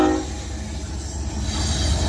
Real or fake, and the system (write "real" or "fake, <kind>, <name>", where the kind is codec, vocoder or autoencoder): real